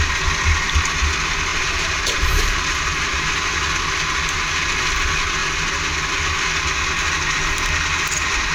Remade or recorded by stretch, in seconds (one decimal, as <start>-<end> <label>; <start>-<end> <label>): 0.0-1.5 recorded; 1.5-3.3 remade; 3.3-8.5 recorded